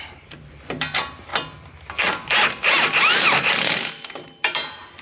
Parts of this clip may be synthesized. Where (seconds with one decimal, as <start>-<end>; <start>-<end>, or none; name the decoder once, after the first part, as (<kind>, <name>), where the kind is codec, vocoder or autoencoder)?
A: 0.0-1.3 (vocoder, BigVGAN v2); 3.9-5.0